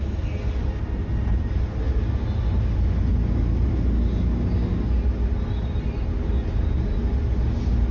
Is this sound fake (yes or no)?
no